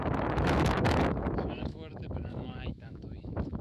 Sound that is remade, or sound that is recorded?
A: remade